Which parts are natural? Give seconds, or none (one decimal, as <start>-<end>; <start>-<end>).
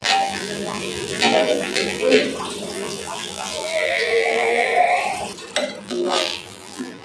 2.2-2.7; 4.7-5.8